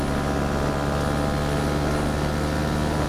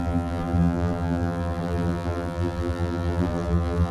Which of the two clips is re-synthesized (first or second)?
second